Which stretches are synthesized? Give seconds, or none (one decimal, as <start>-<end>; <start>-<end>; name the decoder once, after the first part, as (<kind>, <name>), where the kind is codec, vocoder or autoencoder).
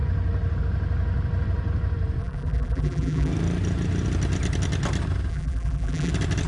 2.2-3.3 (vocoder, BigVGAN v2); 5.3-6.1